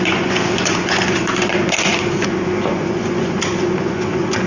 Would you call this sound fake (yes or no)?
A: yes